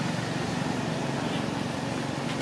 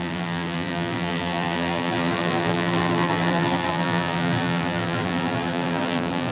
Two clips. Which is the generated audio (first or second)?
second